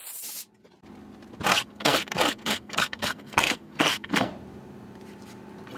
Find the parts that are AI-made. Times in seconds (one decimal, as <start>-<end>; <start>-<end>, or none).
1.5-4.3